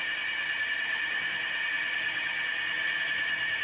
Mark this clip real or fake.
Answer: real